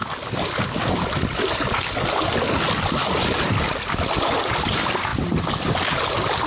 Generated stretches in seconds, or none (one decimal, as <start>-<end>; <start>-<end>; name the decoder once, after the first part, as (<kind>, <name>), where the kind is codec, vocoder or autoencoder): none